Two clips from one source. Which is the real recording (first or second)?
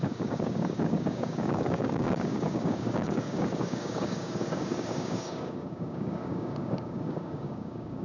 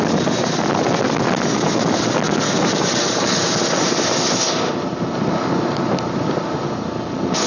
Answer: second